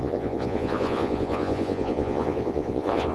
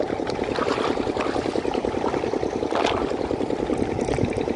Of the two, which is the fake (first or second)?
first